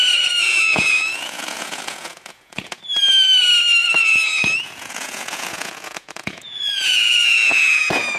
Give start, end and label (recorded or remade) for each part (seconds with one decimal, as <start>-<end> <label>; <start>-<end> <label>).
0.0-0.4 recorded; 0.4-2.8 remade; 2.8-3.8 recorded; 3.8-8.2 remade